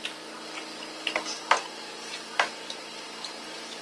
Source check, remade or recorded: recorded